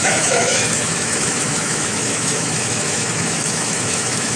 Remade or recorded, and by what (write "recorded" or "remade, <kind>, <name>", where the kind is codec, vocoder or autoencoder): remade, autoencoder, DAC-VAE